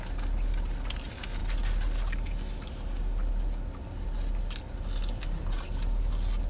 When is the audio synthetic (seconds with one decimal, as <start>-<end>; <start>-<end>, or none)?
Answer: none